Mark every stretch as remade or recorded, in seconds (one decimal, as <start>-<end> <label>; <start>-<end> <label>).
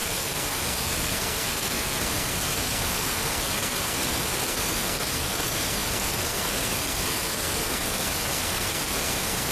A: 0.0-9.5 remade